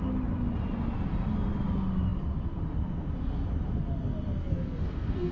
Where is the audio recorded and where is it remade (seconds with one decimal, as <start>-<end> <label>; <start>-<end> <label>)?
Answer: 0.0-4.4 recorded; 4.4-5.3 remade